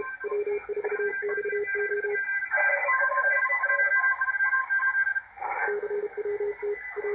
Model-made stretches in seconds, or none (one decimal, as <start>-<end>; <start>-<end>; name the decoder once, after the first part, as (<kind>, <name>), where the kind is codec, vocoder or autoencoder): 2.3-3.7 (vocoder, BigVGAN v2)